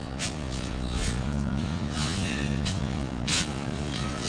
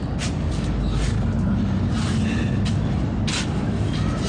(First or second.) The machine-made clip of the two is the first